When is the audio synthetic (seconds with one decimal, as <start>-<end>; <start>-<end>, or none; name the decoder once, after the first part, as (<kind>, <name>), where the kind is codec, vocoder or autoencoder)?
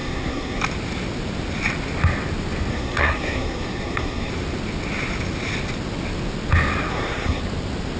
0.0-0.6 (codec, SNAC); 2.7-4.3; 6.9-7.4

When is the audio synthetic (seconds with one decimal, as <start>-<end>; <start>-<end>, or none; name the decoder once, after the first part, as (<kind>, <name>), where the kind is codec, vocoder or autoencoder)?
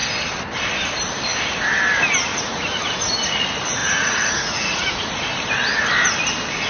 2.3-2.9 (vocoder, Vocos); 3.8-5.2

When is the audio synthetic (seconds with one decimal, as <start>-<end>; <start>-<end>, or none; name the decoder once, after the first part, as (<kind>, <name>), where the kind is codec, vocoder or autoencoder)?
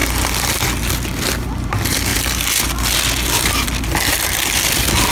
none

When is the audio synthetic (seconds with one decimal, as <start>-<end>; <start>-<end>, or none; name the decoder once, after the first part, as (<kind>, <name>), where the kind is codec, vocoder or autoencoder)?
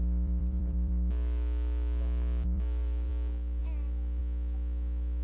0.0-3.1 (vocoder, BigVGAN v2)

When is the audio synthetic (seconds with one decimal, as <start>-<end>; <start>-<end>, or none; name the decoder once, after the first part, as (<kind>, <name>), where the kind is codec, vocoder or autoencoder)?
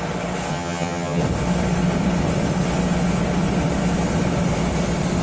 0.5-1.2 (vocoder, HiFi-GAN)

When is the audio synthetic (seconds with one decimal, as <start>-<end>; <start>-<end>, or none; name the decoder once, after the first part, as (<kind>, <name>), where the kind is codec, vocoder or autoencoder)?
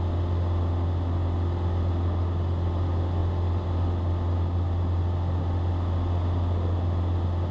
none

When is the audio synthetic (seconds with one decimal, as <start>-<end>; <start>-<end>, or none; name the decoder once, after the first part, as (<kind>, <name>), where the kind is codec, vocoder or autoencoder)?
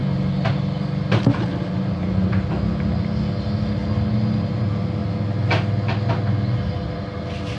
none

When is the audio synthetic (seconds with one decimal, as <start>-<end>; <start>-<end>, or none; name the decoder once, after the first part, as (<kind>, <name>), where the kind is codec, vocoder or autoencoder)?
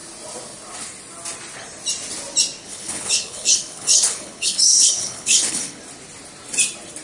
2.6-5.8 (codec, HILCodec)